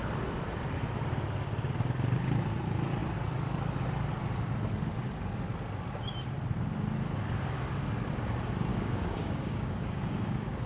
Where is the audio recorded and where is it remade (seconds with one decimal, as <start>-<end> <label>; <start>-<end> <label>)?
0.0-8.7 recorded; 8.7-10.7 remade